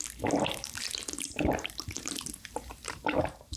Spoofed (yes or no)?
yes